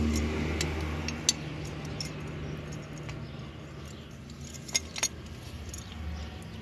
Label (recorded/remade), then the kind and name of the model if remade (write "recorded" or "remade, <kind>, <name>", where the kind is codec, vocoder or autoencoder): recorded